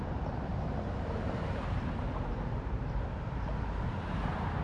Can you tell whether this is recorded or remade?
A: remade